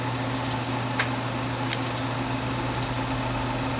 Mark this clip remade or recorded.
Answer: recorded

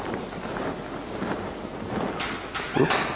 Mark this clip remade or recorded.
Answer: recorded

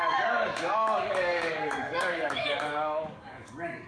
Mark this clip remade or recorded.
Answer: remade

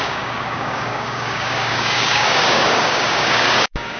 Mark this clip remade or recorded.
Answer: remade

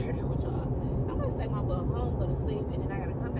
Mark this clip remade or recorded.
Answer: recorded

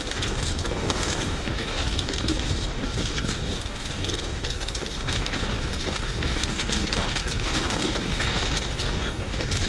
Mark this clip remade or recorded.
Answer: remade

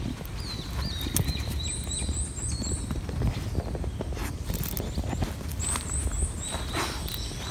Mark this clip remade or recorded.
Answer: recorded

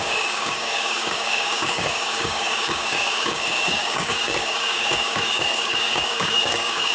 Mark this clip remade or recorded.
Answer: remade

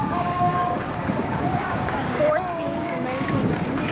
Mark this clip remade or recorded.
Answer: remade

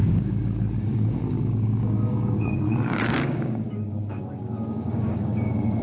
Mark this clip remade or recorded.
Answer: remade